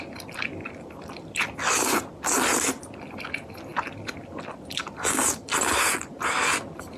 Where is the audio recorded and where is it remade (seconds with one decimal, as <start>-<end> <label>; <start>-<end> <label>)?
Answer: 0.0-7.0 recorded